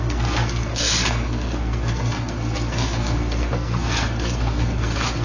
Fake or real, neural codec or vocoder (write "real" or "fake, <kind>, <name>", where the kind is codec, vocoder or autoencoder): fake, codec, SNAC